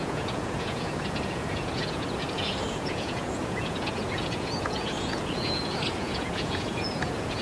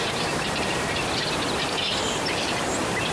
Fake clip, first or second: first